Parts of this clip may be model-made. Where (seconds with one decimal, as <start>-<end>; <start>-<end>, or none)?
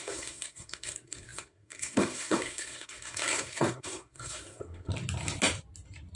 0.0-4.9